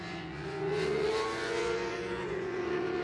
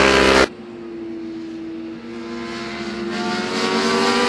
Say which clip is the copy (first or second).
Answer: first